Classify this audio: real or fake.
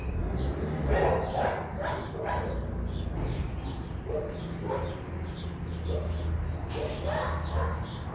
real